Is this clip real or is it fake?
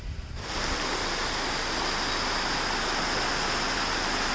real